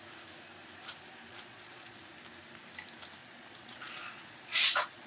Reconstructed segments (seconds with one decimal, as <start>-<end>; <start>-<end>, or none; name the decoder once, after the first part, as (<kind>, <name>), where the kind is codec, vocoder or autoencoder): 1.3-2.0 (vocoder, Vocos); 3.2-5.1